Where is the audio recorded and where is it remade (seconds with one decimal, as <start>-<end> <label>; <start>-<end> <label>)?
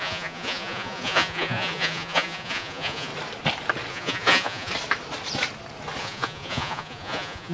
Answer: 0.0-3.1 remade; 3.1-3.9 recorded; 3.9-4.7 remade; 4.7-6.0 recorded; 6.0-7.5 remade